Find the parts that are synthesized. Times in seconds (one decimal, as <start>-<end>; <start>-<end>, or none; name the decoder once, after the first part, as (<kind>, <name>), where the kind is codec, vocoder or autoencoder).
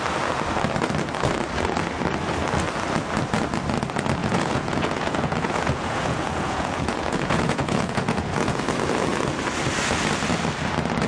4.2-8.6 (vocoder, Vocos)